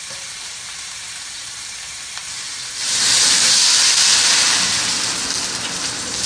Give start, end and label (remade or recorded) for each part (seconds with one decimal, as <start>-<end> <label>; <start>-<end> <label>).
0.0-5.2 remade; 5.2-5.8 recorded; 5.8-6.3 remade

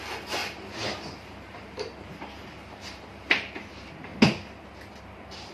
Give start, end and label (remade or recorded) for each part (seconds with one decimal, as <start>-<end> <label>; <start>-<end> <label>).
0.0-0.4 remade; 0.4-1.1 recorded; 1.1-4.1 remade; 4.1-5.0 recorded; 5.0-5.5 remade